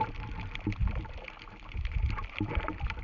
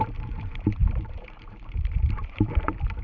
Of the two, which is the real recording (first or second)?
first